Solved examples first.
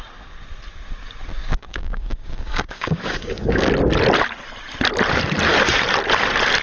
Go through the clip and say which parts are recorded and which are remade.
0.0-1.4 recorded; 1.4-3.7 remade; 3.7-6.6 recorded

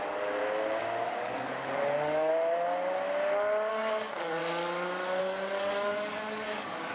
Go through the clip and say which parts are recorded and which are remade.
0.0-0.4 remade; 0.4-1.0 recorded; 1.0-2.3 remade; 2.3-3.7 recorded; 3.7-4.4 remade; 4.4-5.2 recorded; 5.2-6.9 remade

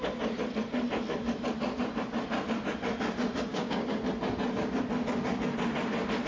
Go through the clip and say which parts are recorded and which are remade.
0.0-3.5 recorded; 3.5-4.0 remade; 4.0-6.3 recorded